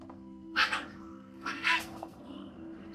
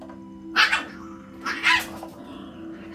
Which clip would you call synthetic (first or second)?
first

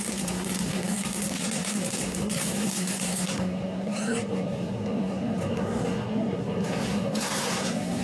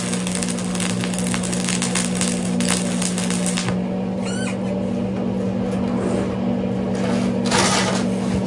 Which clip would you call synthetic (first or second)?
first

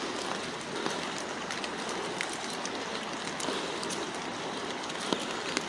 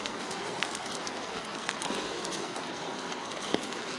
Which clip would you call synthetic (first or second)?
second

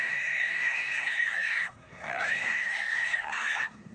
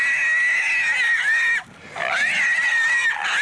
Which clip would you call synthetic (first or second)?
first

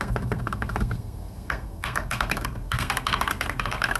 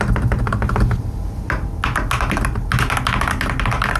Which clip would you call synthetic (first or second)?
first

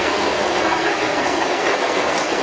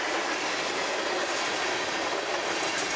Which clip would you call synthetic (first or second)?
first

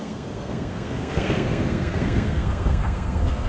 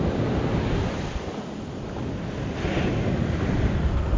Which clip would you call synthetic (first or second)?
first